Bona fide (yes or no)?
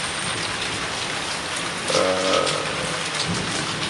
yes